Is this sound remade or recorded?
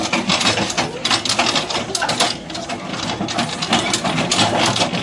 recorded